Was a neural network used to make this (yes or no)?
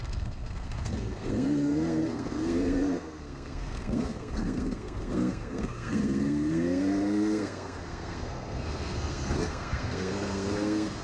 yes